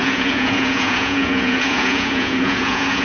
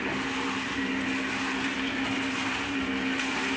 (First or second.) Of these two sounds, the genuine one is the second